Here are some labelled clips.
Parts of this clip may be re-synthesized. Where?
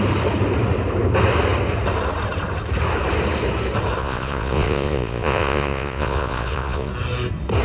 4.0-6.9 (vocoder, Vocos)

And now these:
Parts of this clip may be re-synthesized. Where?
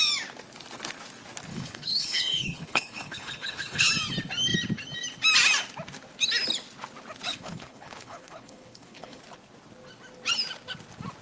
1.5-3.9 (codec, HILCodec); 7.3-9.2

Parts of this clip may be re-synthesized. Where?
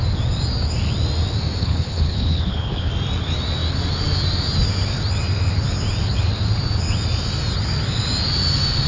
1.6-2.9 (codec, HILCodec)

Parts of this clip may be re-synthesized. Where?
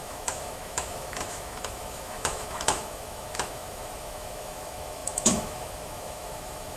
0.0-6.8 (autoencoder, DAC-VAE)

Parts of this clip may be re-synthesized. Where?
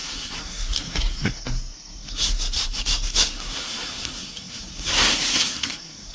0.0-6.1 (codec, SNAC)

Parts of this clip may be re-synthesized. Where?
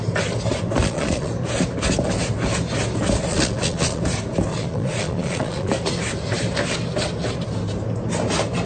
0.8-1.3 (vocoder, Vocos); 3.3-4.0; 4.5-5.7